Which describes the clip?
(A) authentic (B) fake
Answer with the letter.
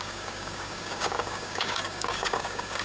B